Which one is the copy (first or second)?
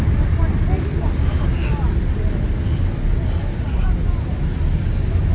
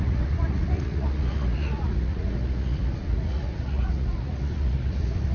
second